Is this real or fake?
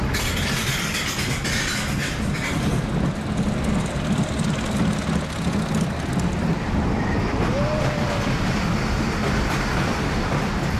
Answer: real